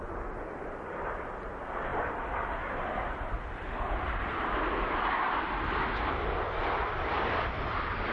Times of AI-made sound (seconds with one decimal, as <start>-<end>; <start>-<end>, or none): none